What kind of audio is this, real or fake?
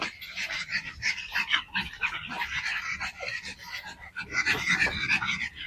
real